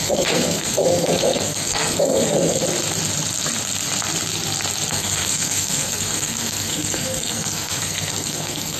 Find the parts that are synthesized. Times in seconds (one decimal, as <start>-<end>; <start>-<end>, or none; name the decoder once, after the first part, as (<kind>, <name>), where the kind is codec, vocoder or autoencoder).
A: 0.0-2.6 (codec, SNAC); 4.9-8.8

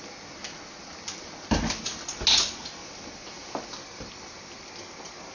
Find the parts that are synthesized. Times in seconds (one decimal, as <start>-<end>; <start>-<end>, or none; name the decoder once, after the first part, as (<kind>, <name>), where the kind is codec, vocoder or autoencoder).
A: 2.8-4.7 (vocoder, BigVGAN v2)

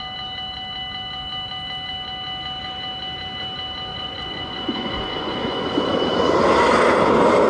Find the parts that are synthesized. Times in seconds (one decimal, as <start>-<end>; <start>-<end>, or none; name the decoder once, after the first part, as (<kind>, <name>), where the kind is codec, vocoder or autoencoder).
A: 3.9-6.3 (vocoder, Vocos)

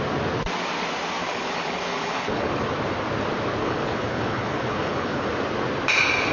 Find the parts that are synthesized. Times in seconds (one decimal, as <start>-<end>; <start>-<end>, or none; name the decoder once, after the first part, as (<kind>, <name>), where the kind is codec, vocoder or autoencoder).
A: 1.2-2.5 (codec, HILCodec); 3.6-5.3

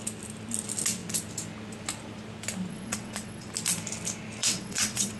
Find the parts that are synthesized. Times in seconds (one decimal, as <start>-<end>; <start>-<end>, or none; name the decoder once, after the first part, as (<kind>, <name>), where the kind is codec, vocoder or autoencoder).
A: 2.7-3.5 (vocoder, WaveNeXt); 4.4-5.2

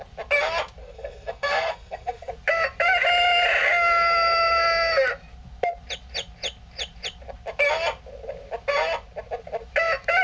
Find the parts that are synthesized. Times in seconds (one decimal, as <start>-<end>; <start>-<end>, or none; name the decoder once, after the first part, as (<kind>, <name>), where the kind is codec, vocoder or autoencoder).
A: 0.8-2.3 (codec, SNAC)

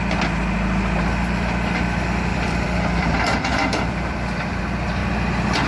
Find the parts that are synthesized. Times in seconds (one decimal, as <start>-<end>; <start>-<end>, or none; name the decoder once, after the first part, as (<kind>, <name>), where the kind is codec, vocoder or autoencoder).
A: 2.3-4.6 (vocoder, BigVGAN v2)